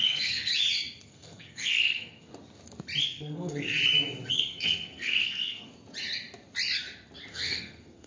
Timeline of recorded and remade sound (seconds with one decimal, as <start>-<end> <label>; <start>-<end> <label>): 0.0-0.5 remade; 0.5-1.1 recorded; 1.1-2.3 remade; 2.3-3.0 recorded; 3.0-3.8 remade; 3.8-4.3 recorded; 4.3-5.7 remade; 5.7-7.3 recorded; 7.3-8.1 remade